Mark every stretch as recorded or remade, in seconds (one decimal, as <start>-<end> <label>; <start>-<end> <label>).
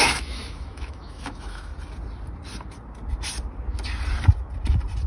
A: 0.0-1.7 remade; 1.7-5.1 recorded